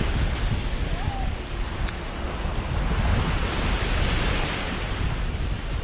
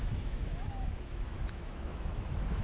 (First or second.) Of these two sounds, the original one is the first